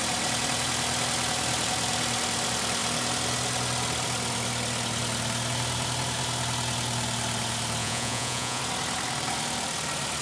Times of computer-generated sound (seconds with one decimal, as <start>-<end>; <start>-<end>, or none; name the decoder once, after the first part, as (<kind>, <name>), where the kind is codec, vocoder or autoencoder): 7.8-8.6 (vocoder, Vocos)

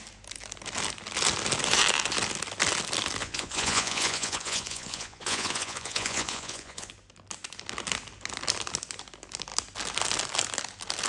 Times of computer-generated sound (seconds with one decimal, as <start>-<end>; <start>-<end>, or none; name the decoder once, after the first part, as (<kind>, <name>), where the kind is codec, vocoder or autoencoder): 3.2-6.9 (vocoder, Vocos)